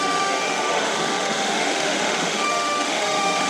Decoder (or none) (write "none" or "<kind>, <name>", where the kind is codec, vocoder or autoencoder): autoencoder, DAC-VAE